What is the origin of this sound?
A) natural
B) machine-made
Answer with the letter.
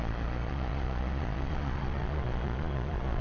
B